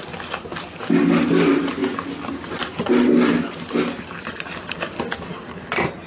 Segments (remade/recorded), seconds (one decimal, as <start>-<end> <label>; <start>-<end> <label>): 0.0-6.1 recorded